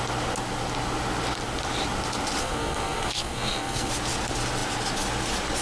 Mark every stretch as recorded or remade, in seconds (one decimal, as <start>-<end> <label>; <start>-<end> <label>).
0.0-2.4 recorded; 2.4-3.9 remade; 3.9-5.6 recorded